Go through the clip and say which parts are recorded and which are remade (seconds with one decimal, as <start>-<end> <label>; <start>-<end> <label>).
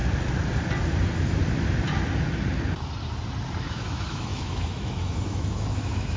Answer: 0.0-3.7 recorded; 3.7-6.2 remade